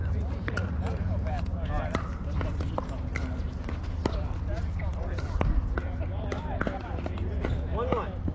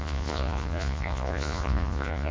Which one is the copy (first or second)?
second